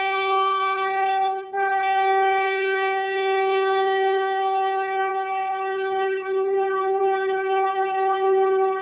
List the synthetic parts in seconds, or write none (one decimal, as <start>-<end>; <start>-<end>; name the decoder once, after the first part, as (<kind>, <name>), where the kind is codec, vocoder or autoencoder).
0.0-8.8 (codec, HILCodec)